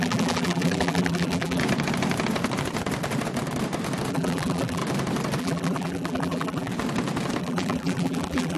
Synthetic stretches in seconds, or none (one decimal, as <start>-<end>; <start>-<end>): 0.0-1.6; 4.1-4.8; 5.4-6.7; 7.4-8.6